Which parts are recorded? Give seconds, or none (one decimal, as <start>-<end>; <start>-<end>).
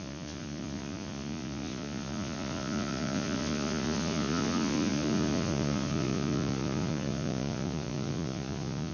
none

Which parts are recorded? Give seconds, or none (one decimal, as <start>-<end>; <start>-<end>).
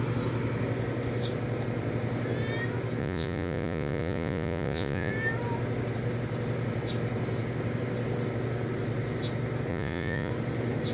0.0-3.0; 5.1-9.7; 10.3-10.9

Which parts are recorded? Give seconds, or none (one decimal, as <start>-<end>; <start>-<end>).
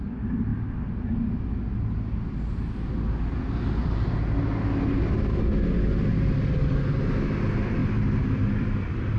0.0-3.8; 4.4-7.8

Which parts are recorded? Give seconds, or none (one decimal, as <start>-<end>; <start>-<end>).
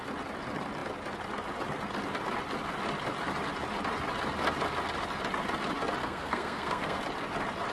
0.0-6.0; 7.0-7.7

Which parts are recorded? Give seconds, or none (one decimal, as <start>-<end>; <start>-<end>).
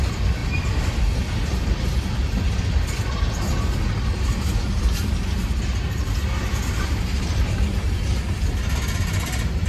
0.0-9.7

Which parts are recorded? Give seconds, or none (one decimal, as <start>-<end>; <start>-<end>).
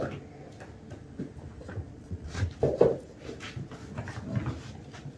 0.0-1.9; 2.4-5.2